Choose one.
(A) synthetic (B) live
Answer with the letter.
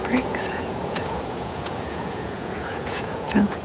A